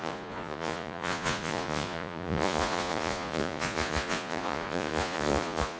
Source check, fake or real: fake